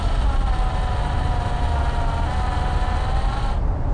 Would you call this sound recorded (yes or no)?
yes